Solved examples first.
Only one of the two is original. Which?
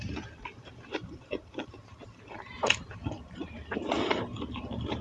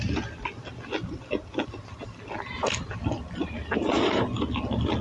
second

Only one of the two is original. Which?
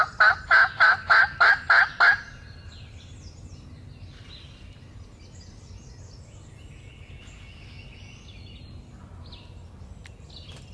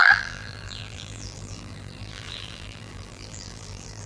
first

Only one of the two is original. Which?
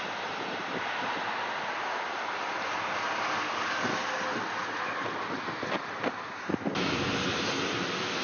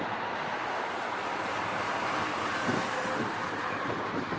first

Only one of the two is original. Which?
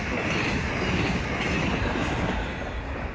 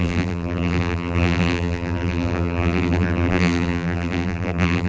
first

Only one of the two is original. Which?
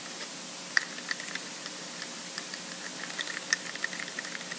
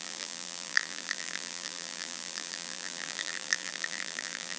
first